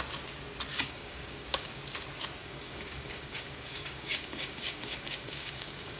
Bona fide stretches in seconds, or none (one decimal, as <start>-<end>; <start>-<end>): 0.0-0.7; 1.8-2.4